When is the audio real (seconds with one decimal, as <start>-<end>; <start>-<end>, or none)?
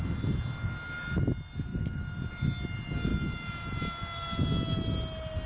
0.0-5.5